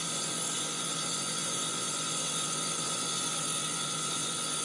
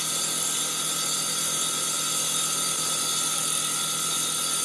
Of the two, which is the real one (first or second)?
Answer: second